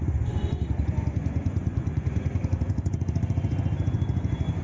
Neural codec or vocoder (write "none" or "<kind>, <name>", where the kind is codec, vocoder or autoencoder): vocoder, Vocos